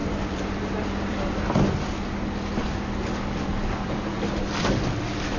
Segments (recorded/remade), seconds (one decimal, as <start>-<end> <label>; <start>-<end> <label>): 0.0-1.3 remade; 1.3-3.5 recorded; 3.5-5.0 remade; 5.0-5.4 recorded